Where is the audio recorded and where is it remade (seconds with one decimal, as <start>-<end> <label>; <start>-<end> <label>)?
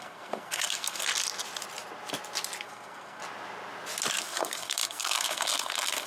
0.0-1.1 remade; 1.1-2.6 recorded; 2.6-3.2 remade; 3.2-4.1 recorded; 4.1-6.1 remade